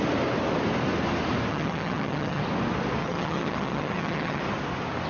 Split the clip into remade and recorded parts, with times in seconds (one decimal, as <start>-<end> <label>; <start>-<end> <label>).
0.0-1.5 recorded; 1.5-2.4 remade; 2.4-3.0 recorded; 3.0-4.4 remade; 4.4-5.1 recorded